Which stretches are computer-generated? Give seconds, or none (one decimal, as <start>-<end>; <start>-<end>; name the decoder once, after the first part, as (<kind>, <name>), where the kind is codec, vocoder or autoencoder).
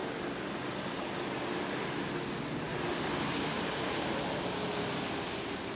2.7-4.1 (vocoder, BigVGAN v2)